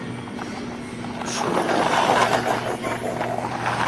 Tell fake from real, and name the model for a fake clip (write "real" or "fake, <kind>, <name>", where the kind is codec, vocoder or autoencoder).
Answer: real